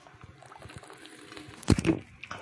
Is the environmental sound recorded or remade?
recorded